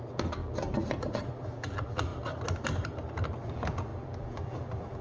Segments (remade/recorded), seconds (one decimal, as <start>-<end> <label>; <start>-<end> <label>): 0.0-2.1 remade; 2.1-3.5 recorded; 3.5-5.0 remade